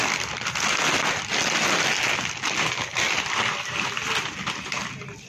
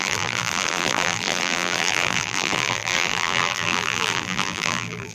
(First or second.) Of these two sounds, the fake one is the second